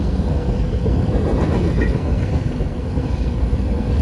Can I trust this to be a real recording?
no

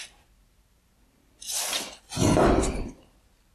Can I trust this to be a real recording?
yes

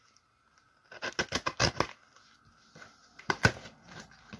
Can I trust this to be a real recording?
yes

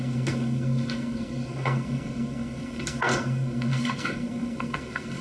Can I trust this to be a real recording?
no